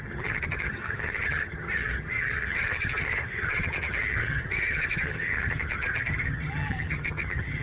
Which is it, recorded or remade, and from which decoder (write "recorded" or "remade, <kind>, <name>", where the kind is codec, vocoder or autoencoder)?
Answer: remade, vocoder, HiFi-GAN